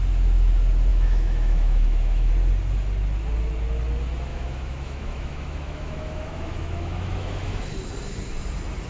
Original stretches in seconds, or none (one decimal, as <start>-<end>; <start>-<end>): 0.0-0.9; 2.3-4.3; 7.6-8.9